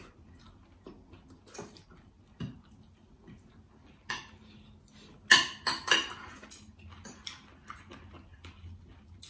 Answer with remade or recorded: recorded